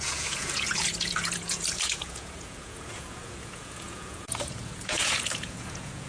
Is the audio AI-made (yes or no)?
yes